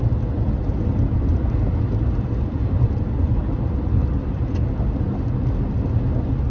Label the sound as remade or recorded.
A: recorded